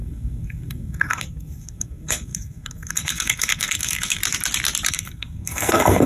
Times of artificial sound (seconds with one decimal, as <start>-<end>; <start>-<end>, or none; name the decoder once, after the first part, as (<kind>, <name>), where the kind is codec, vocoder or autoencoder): 0.0-4.2 (codec, SNAC); 4.9-6.1